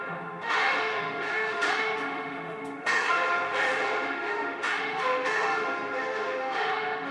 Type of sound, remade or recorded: remade